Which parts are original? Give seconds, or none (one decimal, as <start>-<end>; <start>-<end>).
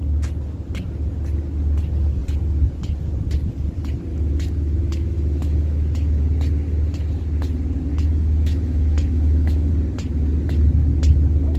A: 0.0-4.1; 6.2-7.9; 9.7-11.6